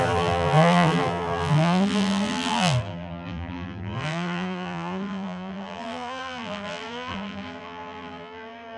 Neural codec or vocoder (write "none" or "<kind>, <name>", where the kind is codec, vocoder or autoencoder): vocoder, BigVGAN v2